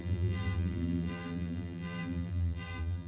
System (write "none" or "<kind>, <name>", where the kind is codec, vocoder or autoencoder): vocoder, BigVGAN v2